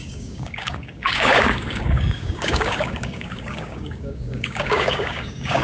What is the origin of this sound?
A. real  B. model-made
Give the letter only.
B